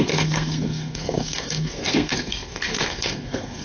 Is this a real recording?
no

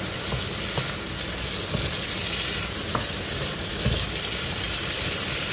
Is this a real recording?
yes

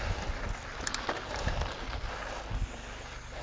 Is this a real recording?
yes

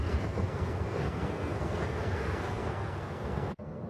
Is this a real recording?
no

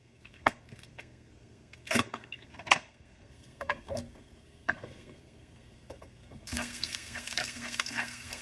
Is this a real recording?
no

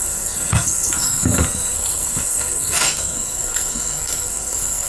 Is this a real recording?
no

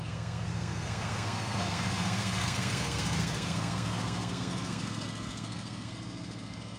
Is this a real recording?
no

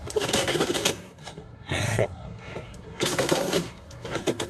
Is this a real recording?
no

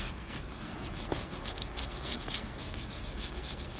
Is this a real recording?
no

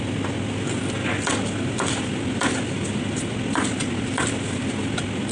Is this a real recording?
yes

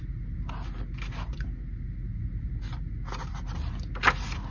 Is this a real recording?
yes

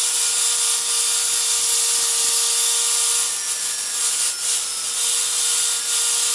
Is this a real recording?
yes